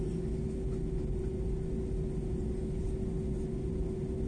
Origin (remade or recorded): recorded